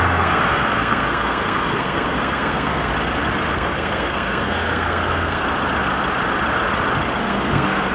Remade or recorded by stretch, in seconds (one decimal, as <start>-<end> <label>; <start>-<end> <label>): 0.0-2.9 remade; 2.9-3.5 recorded; 3.5-5.4 remade; 5.4-7.2 recorded; 7.2-7.9 remade